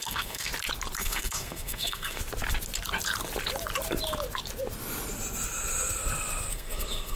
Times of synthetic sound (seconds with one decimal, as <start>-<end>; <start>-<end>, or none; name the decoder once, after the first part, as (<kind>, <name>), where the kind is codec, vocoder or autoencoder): 0.0-0.5 (codec, SNAC); 1.0-2.2; 6.5-7.2